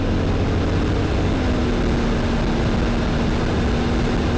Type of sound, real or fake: real